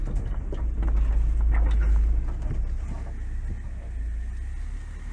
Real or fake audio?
real